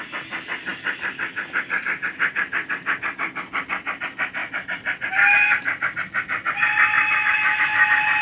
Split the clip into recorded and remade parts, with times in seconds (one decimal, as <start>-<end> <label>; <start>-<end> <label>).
0.0-0.7 recorded; 0.7-1.8 remade; 1.8-8.2 recorded